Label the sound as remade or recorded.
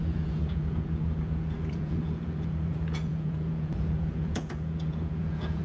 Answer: remade